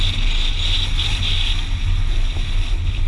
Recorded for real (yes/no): yes